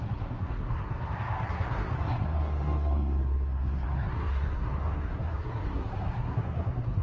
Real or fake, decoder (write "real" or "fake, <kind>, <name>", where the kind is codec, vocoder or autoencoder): fake, codec, SNAC